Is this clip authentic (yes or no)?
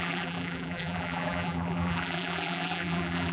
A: no